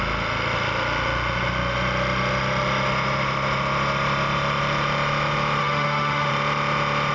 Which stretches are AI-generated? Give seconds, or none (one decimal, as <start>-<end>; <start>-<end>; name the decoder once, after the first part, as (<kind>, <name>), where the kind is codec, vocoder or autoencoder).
5.6-6.3 (autoencoder, DAC-VAE)